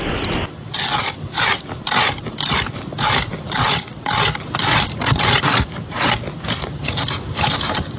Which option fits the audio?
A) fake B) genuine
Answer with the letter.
B